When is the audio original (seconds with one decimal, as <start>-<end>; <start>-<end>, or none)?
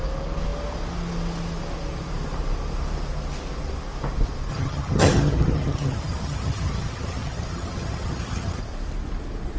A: 0.0-4.5; 8.6-9.6